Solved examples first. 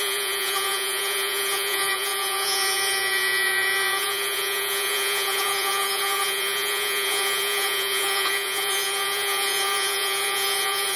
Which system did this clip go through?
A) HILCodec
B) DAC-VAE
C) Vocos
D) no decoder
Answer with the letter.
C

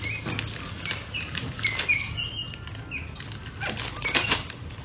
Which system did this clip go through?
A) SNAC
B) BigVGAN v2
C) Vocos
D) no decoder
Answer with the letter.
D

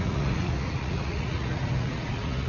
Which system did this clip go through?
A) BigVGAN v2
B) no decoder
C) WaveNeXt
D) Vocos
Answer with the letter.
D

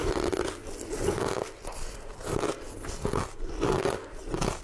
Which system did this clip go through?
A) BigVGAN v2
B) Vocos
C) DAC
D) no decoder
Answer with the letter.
D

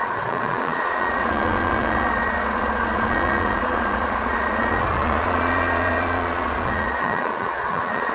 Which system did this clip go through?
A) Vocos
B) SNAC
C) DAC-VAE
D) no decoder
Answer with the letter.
A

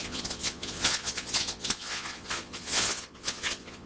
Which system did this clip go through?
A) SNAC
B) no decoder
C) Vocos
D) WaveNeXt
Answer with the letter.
C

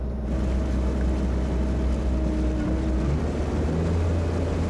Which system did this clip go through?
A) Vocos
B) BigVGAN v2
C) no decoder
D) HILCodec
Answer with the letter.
C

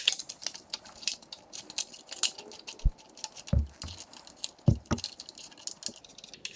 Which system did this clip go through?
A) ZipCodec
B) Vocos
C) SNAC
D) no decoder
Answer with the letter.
D